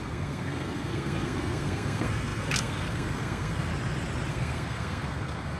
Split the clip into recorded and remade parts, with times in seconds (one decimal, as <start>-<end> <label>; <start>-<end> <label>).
0.0-3.7 remade; 3.7-4.3 recorded; 4.3-5.6 remade